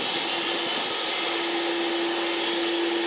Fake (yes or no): no